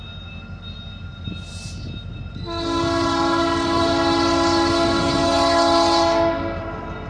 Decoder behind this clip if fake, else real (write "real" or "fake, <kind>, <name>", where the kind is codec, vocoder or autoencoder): real